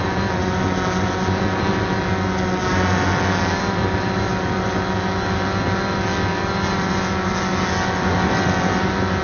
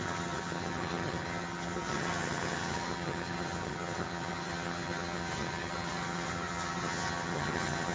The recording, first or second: first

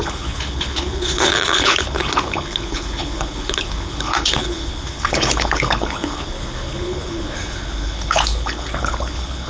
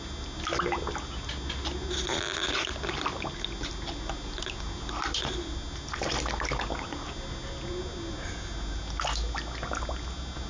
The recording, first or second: second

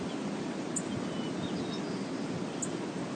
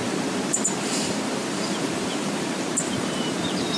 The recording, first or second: first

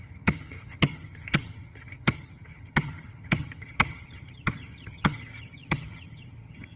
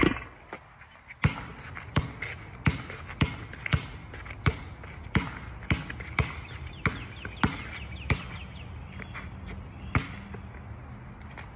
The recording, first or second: second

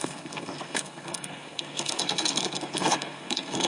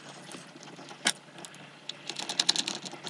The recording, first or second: second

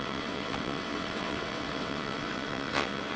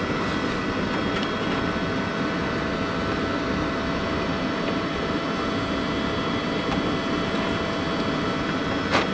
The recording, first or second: second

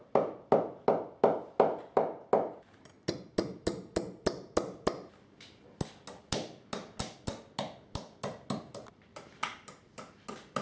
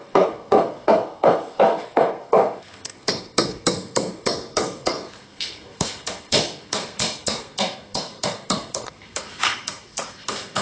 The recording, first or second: first